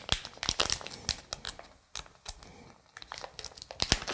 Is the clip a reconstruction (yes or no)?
no